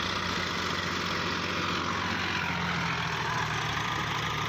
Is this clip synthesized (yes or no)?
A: no